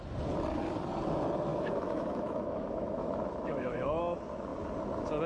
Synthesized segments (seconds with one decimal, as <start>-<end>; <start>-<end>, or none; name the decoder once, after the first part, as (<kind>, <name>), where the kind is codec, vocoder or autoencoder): 1.5-4.0 (autoencoder, DAC-VAE)